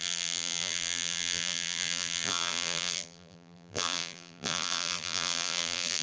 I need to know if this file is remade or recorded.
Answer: remade